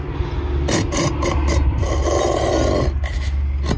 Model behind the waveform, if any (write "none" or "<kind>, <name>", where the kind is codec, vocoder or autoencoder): none